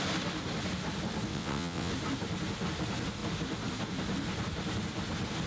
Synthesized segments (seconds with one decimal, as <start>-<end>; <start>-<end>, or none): 1.3-1.9